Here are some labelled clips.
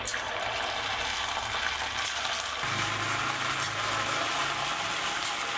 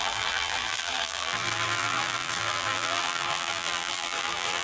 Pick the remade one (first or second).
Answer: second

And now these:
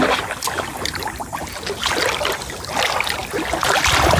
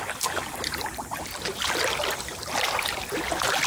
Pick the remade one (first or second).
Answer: second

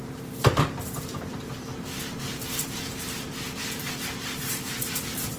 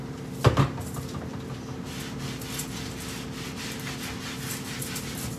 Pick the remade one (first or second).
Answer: first